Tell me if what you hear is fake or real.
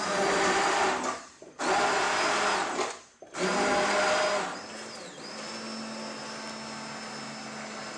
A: real